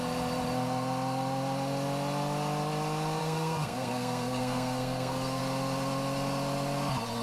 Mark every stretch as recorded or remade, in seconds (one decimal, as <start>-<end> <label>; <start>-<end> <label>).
0.0-3.2 recorded; 3.2-5.4 remade; 5.4-7.2 recorded